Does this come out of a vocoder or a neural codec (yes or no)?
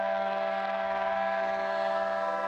yes